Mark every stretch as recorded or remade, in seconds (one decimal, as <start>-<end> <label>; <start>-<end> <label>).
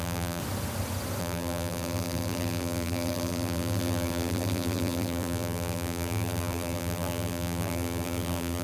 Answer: 0.0-0.4 remade; 0.4-1.2 recorded; 1.2-8.6 remade